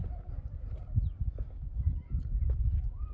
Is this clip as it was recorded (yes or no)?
yes